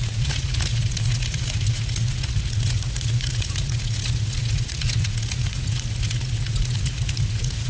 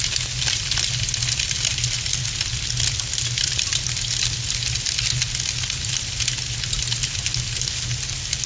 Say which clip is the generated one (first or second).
first